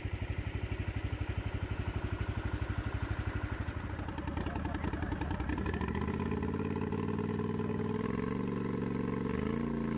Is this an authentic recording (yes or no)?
yes